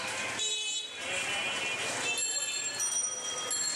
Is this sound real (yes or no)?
yes